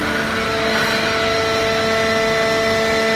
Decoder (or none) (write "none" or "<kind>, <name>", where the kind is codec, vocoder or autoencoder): none